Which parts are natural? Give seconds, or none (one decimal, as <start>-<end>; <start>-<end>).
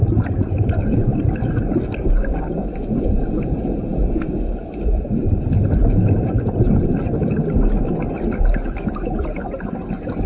0.0-10.3